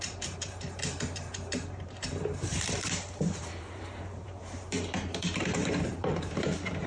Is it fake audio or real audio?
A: fake